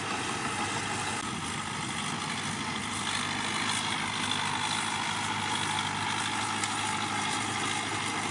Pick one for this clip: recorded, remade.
recorded